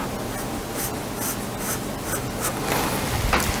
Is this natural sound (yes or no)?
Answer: yes